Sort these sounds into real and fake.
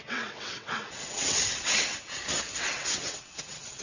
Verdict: fake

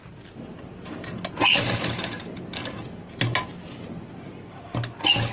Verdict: real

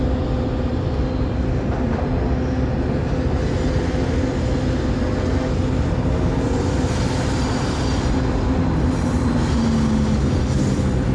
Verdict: real